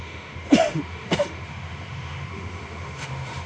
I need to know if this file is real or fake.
fake